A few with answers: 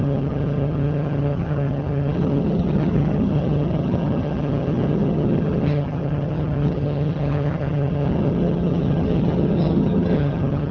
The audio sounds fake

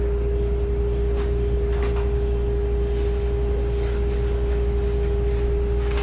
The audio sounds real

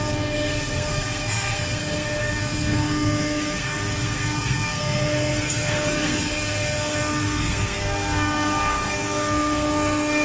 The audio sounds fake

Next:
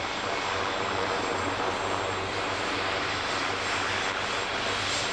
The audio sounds fake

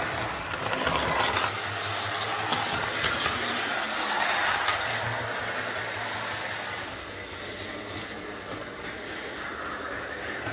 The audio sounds real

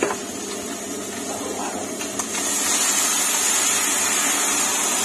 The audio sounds real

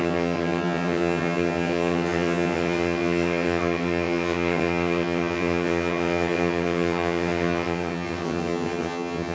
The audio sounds fake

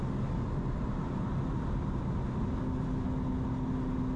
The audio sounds real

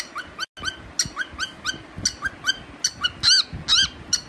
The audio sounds real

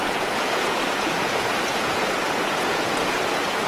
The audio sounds fake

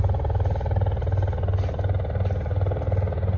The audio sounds real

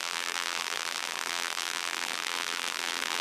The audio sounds fake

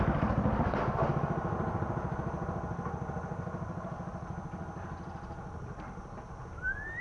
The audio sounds real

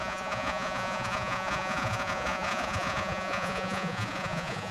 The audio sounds fake